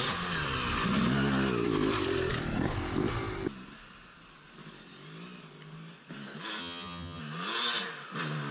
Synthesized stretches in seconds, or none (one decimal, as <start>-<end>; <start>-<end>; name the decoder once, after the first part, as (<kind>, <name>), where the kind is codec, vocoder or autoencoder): 6.6-7.2 (vocoder, HiFi-GAN)